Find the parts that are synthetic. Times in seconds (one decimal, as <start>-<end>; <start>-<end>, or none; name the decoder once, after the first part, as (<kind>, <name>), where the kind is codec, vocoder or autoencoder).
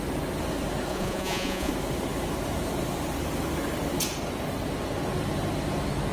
0.9-1.7 (vocoder, Vocos)